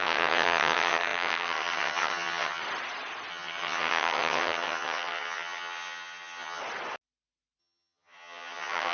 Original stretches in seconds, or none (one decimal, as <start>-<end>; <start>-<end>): 2.6-3.3; 6.6-7.6